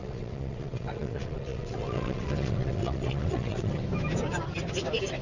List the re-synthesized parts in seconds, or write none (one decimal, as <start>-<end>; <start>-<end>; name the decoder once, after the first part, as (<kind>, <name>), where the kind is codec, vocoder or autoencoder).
0.0-3.8 (vocoder, WaveNeXt)